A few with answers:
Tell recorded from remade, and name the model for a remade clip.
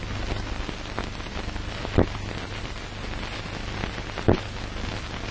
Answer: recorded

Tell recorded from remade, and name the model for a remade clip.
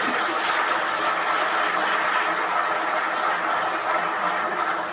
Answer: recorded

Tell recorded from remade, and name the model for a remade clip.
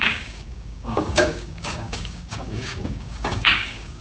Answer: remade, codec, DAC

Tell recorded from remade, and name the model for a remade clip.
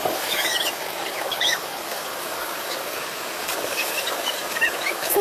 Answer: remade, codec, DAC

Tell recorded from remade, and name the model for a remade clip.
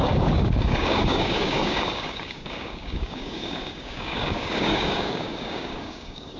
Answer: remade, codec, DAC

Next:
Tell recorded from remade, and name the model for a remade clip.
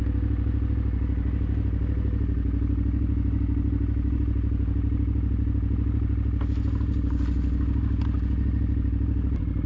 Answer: recorded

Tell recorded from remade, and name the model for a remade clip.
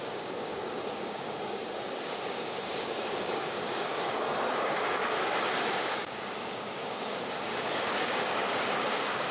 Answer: remade, codec, DAC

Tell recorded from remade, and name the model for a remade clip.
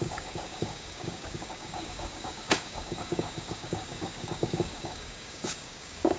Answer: remade, codec, DAC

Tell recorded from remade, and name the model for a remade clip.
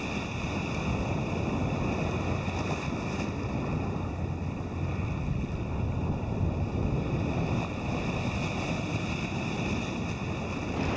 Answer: recorded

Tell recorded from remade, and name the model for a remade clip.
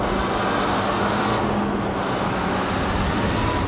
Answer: recorded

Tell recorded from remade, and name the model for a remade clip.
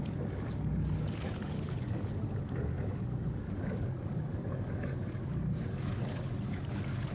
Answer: remade, codec, DAC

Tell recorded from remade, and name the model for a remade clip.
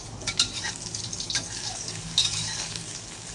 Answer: remade, codec, DAC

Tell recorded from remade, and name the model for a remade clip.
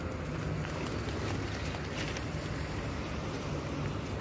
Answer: recorded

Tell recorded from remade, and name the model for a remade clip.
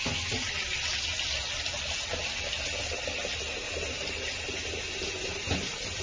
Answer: recorded